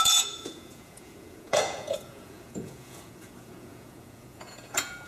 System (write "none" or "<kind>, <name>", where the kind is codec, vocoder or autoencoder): vocoder, Vocos